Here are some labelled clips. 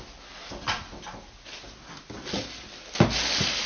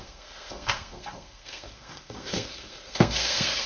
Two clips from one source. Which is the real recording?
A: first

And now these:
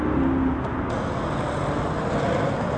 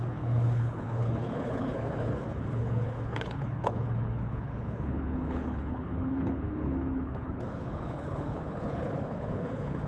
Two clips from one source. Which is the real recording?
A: first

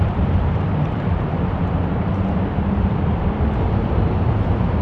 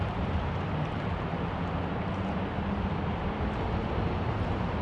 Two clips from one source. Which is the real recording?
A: second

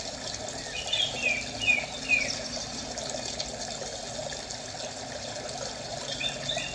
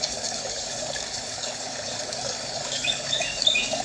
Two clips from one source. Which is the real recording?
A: first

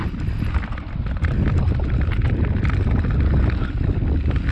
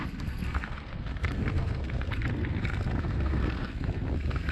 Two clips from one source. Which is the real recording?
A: first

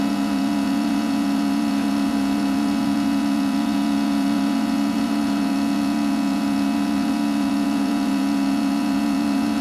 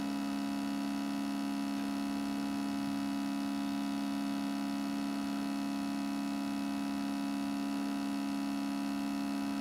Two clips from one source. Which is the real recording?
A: second